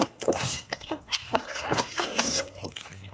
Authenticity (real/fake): fake